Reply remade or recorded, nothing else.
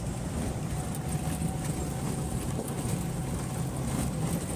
recorded